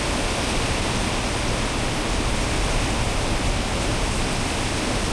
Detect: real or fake real